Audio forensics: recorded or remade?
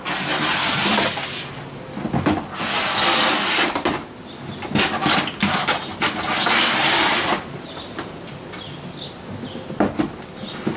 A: recorded